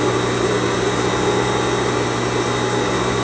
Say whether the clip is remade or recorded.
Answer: recorded